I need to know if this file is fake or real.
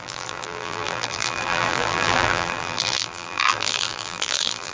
fake